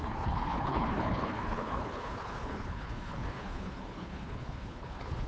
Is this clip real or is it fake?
fake